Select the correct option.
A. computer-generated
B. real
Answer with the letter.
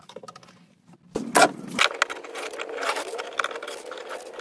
B